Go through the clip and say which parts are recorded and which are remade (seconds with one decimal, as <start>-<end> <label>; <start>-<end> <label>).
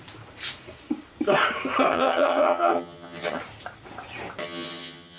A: 0.0-1.9 recorded; 1.9-3.4 remade; 3.4-4.4 recorded; 4.4-5.2 remade